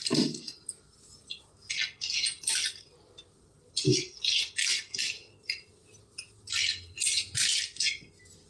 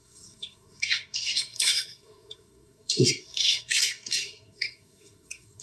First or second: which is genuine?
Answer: first